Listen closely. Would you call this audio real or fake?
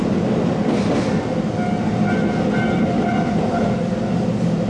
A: real